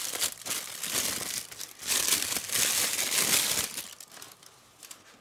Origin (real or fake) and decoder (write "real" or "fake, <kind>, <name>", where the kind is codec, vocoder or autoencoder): fake, vocoder, BigVGAN v2